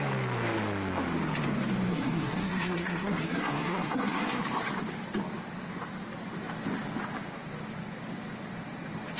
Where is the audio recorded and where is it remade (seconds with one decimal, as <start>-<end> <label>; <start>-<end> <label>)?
0.0-1.9 recorded; 1.9-4.4 remade; 4.4-9.2 recorded